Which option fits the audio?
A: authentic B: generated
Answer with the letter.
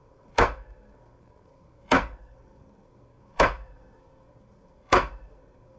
B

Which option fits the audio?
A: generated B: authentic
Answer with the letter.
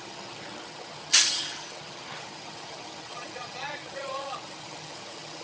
A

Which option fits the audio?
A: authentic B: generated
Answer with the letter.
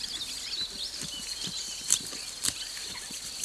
A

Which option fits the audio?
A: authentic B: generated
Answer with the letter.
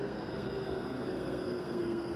B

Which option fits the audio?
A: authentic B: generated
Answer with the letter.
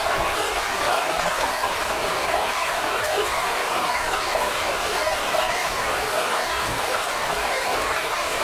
B